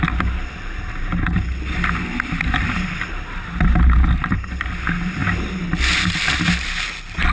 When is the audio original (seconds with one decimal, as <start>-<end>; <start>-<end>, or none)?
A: 0.0-7.3